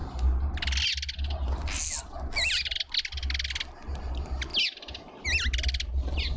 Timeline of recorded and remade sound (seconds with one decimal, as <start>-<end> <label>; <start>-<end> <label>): 0.0-6.4 recorded